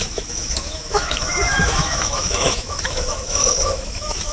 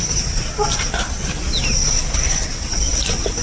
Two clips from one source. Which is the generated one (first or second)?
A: first